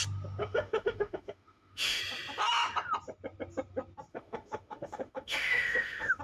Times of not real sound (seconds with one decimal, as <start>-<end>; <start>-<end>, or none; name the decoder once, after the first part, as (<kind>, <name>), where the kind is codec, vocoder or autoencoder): 0.4-2.0 (autoencoder, DAC-VAE); 4.1-6.2

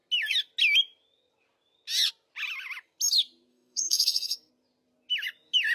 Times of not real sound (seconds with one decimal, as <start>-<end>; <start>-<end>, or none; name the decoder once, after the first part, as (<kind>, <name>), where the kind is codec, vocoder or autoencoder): 3.5-4.5 (codec, SNAC)

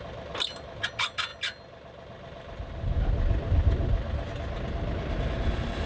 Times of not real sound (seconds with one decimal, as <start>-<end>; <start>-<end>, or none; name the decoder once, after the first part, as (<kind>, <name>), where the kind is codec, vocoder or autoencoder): none